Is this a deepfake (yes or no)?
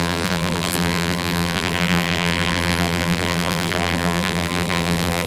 yes